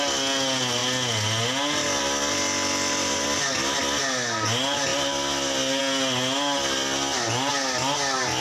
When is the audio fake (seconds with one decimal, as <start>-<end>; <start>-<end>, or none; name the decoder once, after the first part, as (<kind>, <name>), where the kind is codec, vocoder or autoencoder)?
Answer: none